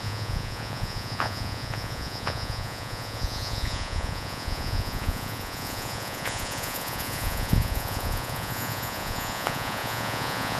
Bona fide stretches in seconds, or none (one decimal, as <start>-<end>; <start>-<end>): none